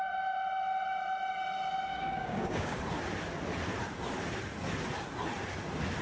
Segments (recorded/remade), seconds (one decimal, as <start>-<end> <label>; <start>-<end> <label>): 0.0-1.9 recorded; 1.9-2.8 remade; 2.8-6.0 recorded